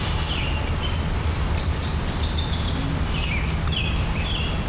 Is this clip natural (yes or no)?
yes